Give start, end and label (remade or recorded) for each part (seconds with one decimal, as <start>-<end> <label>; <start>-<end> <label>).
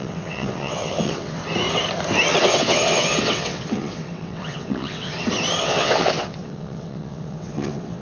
0.0-1.4 remade; 1.4-2.4 recorded; 2.4-5.1 remade; 5.1-5.6 recorded; 5.6-8.0 remade